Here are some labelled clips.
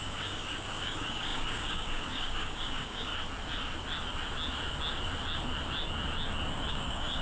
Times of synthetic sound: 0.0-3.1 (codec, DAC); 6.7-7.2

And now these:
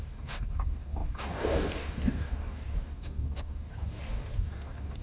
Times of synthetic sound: 0.0-5.0 (codec, DAC)